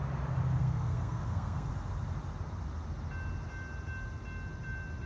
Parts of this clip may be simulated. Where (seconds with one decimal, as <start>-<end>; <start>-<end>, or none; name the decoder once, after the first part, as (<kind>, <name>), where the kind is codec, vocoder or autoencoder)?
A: 0.6-1.7 (codec, SNAC)